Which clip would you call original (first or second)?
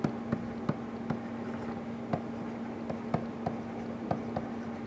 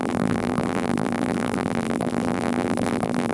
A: first